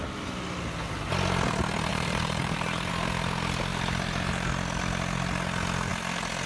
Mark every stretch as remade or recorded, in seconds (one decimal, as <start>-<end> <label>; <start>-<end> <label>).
0.0-1.9 recorded; 1.9-2.9 remade; 2.9-3.7 recorded; 3.7-4.5 remade; 4.5-6.5 recorded